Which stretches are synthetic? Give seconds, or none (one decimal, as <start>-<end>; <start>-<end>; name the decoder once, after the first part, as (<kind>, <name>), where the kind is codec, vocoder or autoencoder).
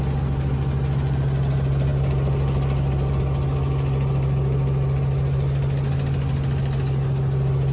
none